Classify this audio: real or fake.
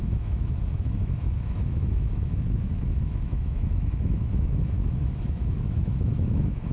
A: fake